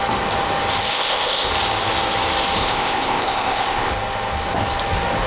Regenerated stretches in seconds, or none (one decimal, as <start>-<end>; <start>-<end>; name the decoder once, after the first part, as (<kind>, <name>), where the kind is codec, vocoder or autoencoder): 0.9-1.5 (codec, ZipCodec); 2.6-3.9